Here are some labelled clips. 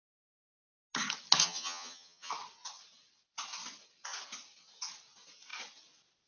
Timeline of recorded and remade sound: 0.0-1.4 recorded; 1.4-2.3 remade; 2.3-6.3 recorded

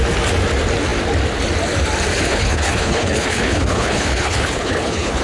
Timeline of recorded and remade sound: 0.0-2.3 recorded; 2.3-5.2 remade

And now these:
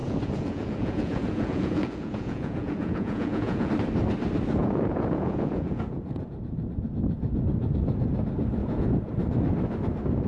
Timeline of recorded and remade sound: 0.0-3.7 remade; 3.7-4.6 recorded; 4.6-6.7 remade; 6.7-8.6 recorded; 8.6-9.1 remade; 9.1-10.3 recorded